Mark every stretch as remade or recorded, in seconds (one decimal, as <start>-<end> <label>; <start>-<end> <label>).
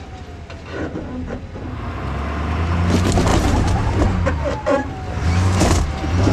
0.0-3.3 recorded; 3.3-3.9 remade; 3.9-6.3 recorded